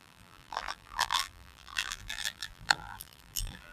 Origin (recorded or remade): remade